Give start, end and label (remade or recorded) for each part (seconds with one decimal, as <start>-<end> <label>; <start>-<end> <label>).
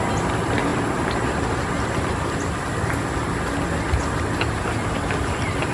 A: 0.0-5.7 recorded